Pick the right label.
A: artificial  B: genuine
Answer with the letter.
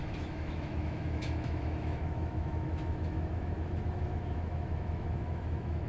A